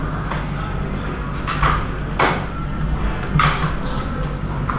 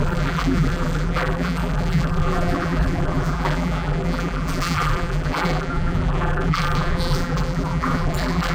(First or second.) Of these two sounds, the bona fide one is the first